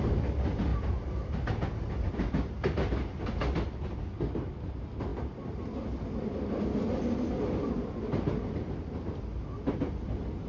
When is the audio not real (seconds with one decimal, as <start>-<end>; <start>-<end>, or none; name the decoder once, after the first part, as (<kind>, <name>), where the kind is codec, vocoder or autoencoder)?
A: none